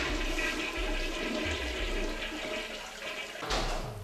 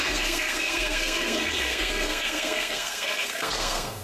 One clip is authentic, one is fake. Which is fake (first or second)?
second